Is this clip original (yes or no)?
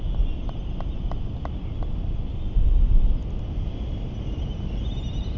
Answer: yes